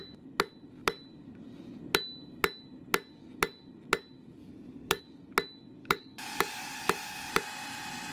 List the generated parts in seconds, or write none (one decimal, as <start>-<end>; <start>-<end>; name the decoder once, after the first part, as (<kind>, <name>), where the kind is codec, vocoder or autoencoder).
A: 4.4-5.0 (codec, DAC); 5.8-7.3